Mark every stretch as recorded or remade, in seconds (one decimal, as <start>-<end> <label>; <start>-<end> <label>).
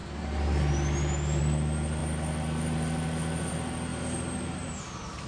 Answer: 0.0-3.9 recorded; 3.9-4.8 remade; 4.8-5.3 recorded